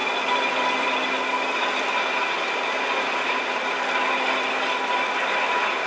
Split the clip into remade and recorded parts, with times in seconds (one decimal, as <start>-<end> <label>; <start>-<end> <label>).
0.0-5.9 recorded